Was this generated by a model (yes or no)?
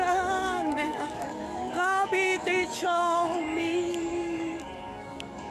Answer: yes